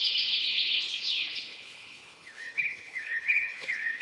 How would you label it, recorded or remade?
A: remade